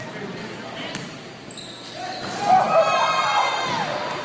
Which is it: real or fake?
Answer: real